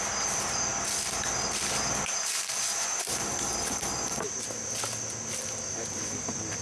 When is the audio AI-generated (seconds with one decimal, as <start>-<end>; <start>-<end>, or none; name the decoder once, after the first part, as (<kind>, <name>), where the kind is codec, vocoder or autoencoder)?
none